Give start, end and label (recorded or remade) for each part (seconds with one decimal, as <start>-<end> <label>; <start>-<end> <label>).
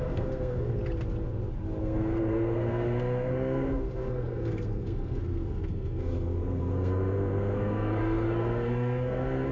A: 0.0-0.8 remade; 0.8-1.8 recorded; 1.8-9.5 remade